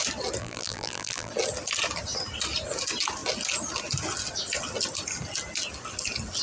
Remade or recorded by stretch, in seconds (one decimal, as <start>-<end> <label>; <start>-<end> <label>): 0.0-0.4 recorded; 0.4-1.3 remade; 1.3-6.4 recorded